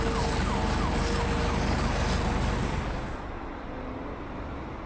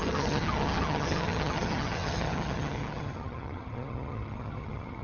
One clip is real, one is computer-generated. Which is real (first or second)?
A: first